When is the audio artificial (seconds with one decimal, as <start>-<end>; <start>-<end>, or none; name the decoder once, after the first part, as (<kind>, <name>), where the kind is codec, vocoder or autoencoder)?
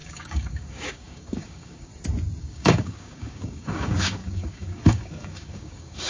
0.0-1.9 (codec, DAC); 2.4-6.1